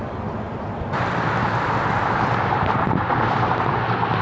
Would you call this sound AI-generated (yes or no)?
no